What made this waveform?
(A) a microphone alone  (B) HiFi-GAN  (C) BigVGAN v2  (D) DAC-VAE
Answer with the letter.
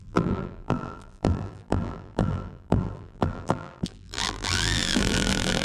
C